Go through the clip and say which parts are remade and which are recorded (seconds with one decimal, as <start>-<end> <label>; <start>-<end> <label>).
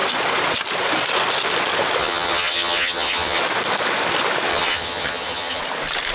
0.0-2.0 recorded; 2.0-3.4 remade; 3.4-4.5 recorded; 4.5-5.6 remade; 5.6-6.1 recorded